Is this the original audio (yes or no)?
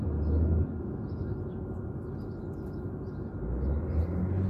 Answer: yes